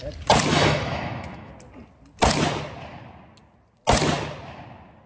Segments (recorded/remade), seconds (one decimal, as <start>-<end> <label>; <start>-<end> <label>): 0.0-0.5 recorded; 0.5-1.5 remade; 1.5-5.1 recorded